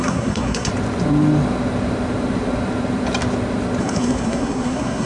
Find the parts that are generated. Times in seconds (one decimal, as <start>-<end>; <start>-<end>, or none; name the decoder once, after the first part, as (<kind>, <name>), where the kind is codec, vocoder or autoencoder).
0.0-0.7 (codec, SNAC); 3.8-5.1